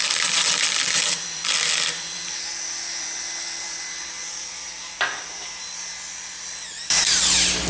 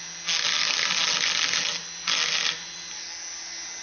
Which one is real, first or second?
second